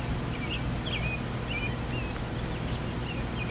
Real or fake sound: real